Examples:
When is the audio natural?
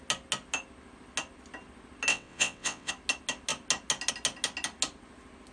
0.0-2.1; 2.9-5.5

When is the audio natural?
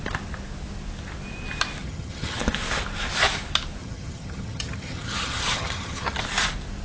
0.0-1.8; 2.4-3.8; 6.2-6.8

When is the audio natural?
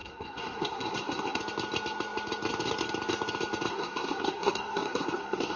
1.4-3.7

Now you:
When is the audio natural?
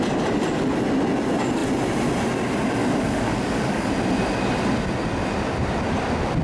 0.0-2.8; 3.9-6.4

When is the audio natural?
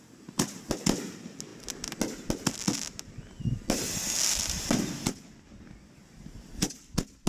0.0-7.3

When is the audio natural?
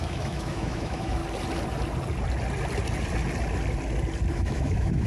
1.2-4.3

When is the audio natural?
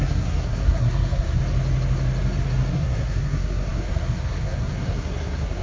1.4-2.7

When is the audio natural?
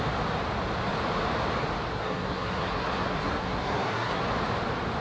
0.0-1.9; 4.2-5.0